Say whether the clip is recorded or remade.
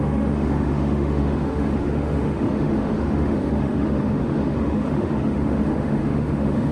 remade